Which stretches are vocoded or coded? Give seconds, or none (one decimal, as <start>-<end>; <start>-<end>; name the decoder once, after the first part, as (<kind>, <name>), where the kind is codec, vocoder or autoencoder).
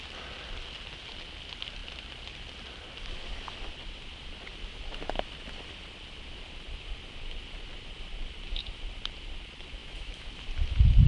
9.8-10.3 (autoencoder, DAC-VAE)